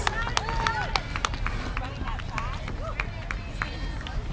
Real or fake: real